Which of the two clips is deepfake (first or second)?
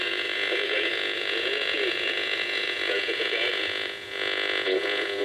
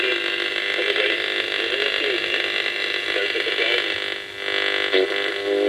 first